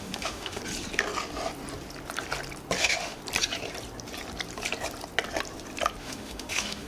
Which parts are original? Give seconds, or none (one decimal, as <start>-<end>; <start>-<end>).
0.6-2.8; 3.2-6.0